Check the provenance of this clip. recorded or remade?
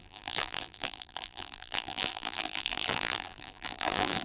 remade